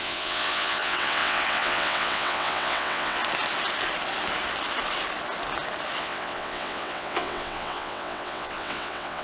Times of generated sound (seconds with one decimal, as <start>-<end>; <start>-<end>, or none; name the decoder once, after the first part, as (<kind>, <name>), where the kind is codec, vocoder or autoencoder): 0.0-3.2 (vocoder, WaveNeXt); 6.0-9.2